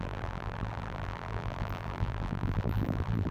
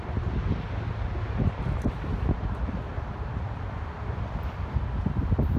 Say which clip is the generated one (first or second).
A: first